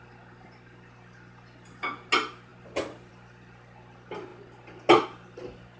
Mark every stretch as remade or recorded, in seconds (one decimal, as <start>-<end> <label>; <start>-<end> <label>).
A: 0.0-5.8 recorded